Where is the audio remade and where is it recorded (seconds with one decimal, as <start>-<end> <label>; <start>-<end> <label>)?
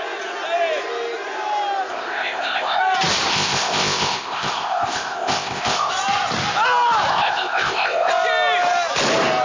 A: 0.0-1.9 recorded; 1.9-2.8 remade; 2.8-3.3 recorded; 3.3-5.9 remade; 5.9-7.1 recorded; 7.1-8.1 remade; 8.1-9.4 recorded